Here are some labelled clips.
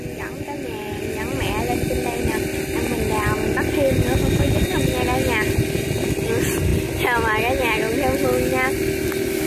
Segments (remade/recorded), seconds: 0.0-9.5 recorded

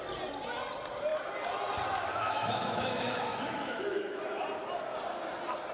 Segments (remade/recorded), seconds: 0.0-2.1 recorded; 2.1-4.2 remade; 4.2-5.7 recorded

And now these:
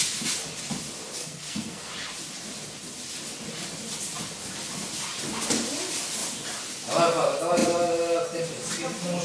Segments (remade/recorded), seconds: 0.0-1.2 recorded; 1.2-1.9 remade; 1.9-9.2 recorded

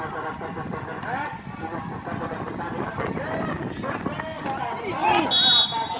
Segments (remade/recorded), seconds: 0.0-6.0 recorded

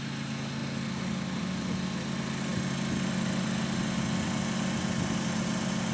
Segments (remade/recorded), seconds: 0.0-5.9 recorded

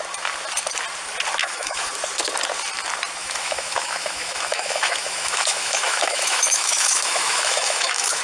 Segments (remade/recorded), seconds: 0.0-1.4 recorded; 1.4-1.9 remade; 1.9-3.2 recorded; 3.2-8.2 remade

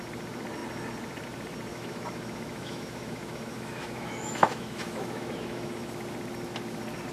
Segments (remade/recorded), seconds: 0.0-1.7 recorded; 1.7-5.9 remade; 5.9-7.1 recorded